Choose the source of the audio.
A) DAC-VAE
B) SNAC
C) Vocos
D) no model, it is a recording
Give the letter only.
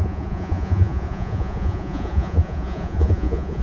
C